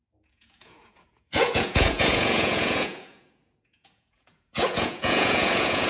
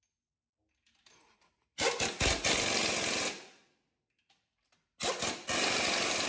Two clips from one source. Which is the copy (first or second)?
first